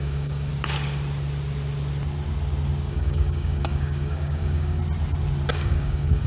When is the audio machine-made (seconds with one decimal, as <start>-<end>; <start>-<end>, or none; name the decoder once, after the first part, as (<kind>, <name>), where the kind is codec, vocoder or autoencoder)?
0.0-0.5 (codec, DAC); 2.9-4.8; 5.5-6.3